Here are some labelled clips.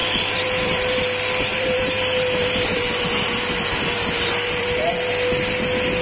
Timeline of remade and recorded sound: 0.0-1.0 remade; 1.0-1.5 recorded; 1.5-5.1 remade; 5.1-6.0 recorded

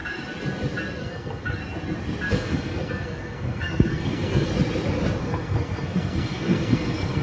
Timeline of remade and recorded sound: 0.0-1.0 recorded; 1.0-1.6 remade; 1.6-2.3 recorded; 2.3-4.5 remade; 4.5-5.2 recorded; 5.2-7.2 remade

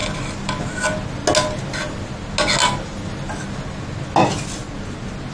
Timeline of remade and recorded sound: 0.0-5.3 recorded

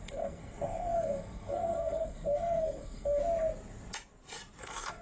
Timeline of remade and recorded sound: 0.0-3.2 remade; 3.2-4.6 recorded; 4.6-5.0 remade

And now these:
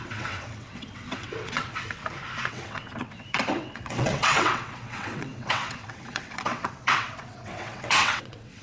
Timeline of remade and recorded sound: 0.0-2.0 remade; 2.0-2.5 recorded; 2.5-8.6 remade